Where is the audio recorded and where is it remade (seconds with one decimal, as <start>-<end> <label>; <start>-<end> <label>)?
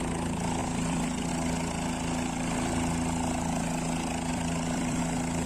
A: 0.0-0.6 recorded; 0.6-1.3 remade; 1.3-4.3 recorded; 4.3-5.0 remade; 5.0-5.5 recorded